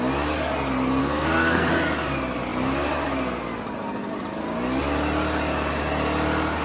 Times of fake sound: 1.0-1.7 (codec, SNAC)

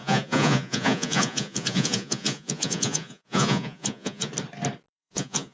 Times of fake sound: 0.0-4.3 (vocoder, Vocos); 4.9-5.5